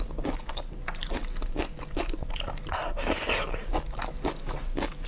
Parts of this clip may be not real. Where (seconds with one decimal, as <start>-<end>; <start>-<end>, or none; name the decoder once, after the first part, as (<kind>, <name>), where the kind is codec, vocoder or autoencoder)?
none